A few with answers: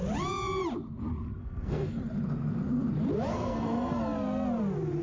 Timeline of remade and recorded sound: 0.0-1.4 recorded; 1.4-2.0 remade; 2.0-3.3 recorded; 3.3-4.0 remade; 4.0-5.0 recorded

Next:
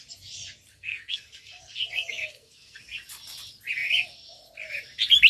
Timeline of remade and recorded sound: 0.0-0.7 recorded; 0.7-2.8 remade; 2.8-5.3 recorded

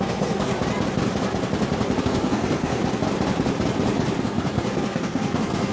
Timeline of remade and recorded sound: 0.0-0.5 remade; 0.5-2.0 recorded; 2.0-2.8 remade; 2.8-4.2 recorded; 4.2-5.7 remade

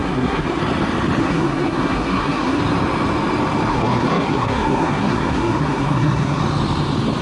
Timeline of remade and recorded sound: 0.0-0.6 remade; 0.6-1.2 recorded; 1.2-2.6 remade; 2.6-3.7 recorded; 3.7-6.4 remade; 6.4-7.2 recorded

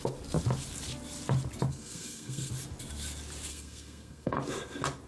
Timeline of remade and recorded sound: 0.0-1.7 recorded; 1.7-2.5 remade; 2.5-3.5 recorded; 3.5-4.4 remade; 4.4-5.1 recorded

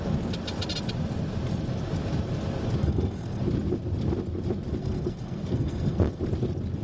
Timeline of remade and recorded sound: 0.0-2.8 recorded; 2.8-3.4 remade; 3.4-4.8 recorded; 4.8-6.2 remade; 6.2-6.8 recorded

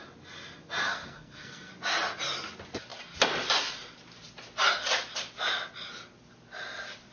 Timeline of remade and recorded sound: 0.0-0.8 recorded; 0.8-1.7 remade; 1.7-7.1 recorded